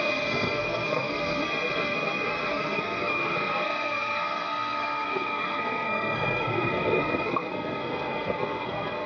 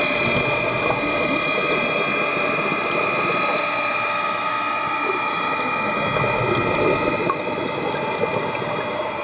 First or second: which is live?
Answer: second